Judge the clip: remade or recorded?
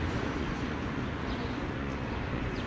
remade